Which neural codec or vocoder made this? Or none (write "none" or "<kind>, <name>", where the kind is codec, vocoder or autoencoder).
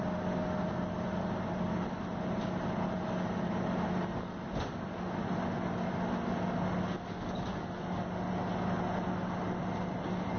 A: none